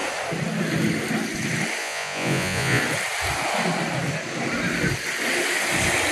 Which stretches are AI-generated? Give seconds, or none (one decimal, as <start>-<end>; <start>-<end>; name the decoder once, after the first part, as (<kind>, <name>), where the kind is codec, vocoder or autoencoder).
1.8-2.8 (vocoder, Vocos)